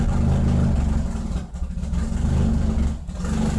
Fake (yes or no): no